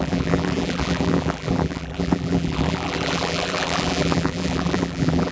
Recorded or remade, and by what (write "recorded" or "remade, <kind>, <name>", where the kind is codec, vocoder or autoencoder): remade, vocoder, BigVGAN v2